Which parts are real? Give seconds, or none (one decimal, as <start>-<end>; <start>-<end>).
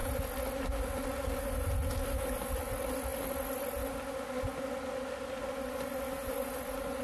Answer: 0.0-7.0